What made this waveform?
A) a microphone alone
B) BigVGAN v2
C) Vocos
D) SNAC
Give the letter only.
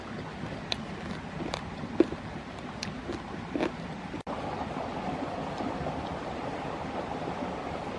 A